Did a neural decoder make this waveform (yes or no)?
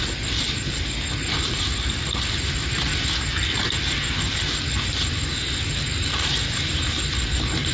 no